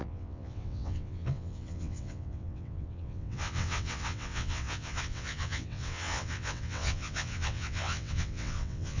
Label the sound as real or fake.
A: fake